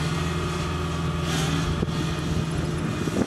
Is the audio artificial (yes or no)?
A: no